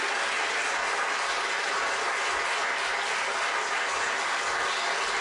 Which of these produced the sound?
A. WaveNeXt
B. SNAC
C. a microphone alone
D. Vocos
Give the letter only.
C